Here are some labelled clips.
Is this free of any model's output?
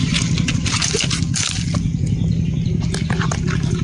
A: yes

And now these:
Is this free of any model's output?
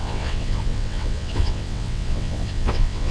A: no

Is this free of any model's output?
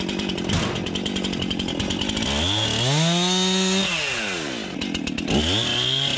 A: yes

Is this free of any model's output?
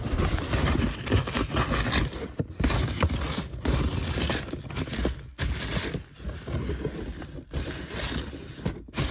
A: yes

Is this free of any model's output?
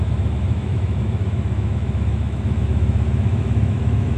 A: no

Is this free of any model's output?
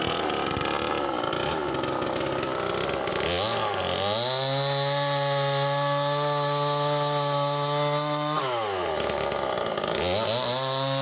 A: yes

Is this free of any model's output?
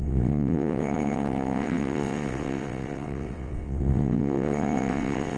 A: no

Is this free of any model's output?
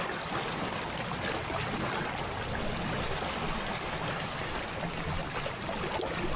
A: yes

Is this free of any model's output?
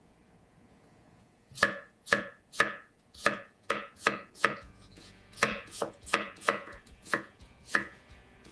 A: no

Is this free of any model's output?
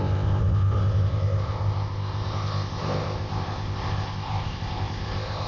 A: no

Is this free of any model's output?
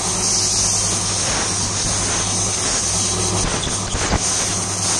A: yes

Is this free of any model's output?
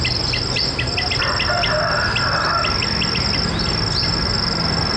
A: yes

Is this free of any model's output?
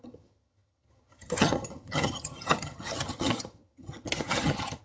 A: no